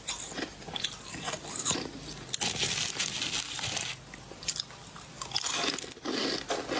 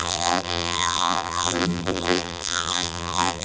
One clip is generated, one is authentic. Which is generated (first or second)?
second